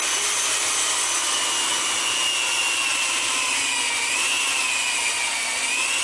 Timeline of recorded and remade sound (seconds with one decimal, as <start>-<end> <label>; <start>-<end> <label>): 0.0-2.9 recorded; 2.9-3.6 remade; 3.6-6.0 recorded